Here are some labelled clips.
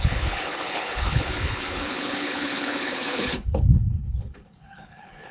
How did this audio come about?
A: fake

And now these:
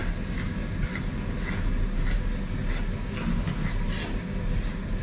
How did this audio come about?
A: real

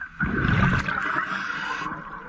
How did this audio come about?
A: real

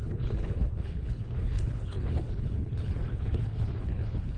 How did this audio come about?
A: fake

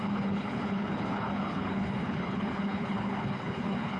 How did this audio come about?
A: fake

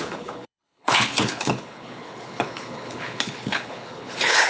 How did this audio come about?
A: fake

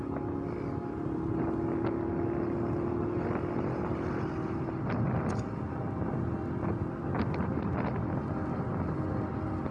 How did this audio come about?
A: real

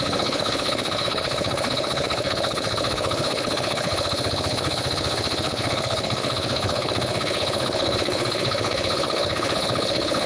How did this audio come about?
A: fake